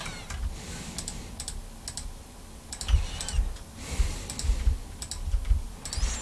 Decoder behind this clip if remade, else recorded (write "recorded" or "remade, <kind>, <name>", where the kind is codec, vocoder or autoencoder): recorded